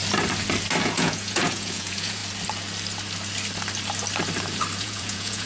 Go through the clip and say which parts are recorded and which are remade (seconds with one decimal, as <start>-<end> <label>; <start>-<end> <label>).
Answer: 0.0-0.8 recorded; 0.8-2.2 remade; 2.2-4.8 recorded; 4.8-5.5 remade